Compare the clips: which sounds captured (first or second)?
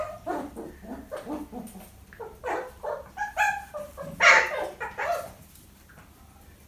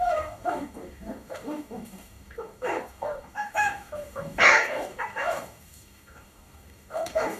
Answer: first